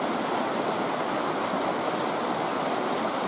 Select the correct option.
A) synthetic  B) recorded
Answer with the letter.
B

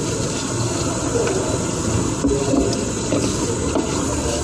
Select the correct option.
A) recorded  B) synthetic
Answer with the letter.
A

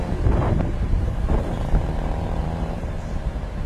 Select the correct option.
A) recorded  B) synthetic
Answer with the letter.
B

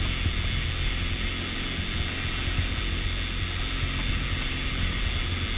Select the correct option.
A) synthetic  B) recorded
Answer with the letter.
B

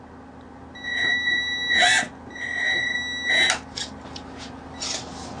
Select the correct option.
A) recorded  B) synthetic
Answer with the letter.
A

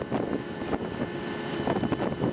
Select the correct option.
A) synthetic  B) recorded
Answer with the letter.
B